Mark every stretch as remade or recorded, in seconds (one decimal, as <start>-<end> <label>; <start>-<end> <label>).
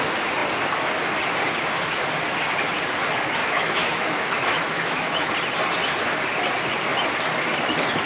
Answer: 0.0-3.4 recorded; 3.4-5.3 remade; 5.3-8.1 recorded